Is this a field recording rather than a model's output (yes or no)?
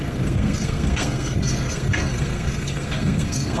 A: no